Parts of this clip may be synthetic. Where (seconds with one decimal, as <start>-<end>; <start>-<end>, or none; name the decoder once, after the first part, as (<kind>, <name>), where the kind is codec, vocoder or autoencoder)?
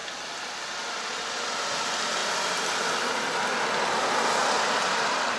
none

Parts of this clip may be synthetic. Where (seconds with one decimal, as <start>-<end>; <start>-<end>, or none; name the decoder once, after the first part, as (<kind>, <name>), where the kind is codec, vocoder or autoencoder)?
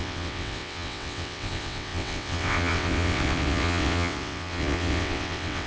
0.0-5.7 (vocoder, WaveNeXt)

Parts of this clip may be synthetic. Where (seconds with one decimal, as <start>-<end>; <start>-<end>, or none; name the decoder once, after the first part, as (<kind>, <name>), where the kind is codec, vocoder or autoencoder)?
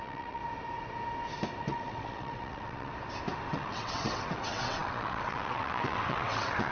0.0-0.4 (vocoder, WaveNeXt); 1.6-2.9; 3.5-6.7